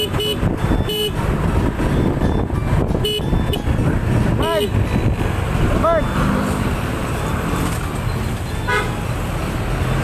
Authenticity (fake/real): real